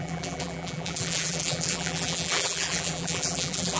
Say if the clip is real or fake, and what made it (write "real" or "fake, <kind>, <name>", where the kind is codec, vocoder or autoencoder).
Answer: fake, vocoder, BigVGAN v2